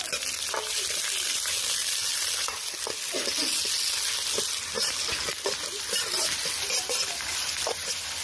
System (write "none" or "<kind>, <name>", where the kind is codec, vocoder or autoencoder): none